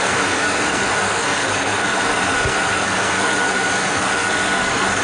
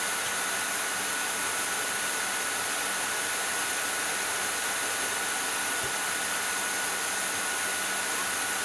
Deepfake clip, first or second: first